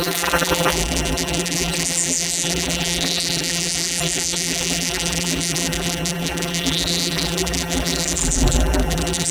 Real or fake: fake